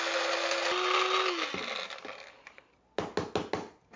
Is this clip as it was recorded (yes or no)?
yes